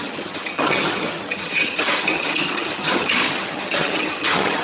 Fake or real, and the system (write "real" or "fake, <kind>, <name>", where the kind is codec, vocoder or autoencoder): fake, vocoder, HiFi-GAN